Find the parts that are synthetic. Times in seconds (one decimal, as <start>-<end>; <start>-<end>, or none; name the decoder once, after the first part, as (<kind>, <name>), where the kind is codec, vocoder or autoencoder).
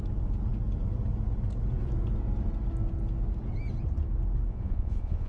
4.5-5.3 (vocoder, Vocos)